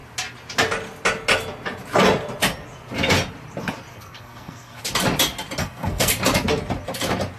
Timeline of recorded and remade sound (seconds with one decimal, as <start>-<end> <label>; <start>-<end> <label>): 0.0-3.9 recorded; 3.9-4.8 remade; 4.8-5.6 recorded; 5.6-6.1 remade; 6.1-7.4 recorded